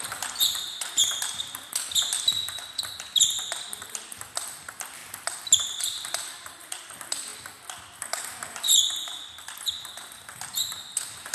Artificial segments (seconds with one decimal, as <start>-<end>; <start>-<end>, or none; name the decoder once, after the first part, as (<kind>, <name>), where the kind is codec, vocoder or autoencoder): 0.0-1.0 (vocoder, BigVGAN v2); 2.8-5.0; 5.8-7.3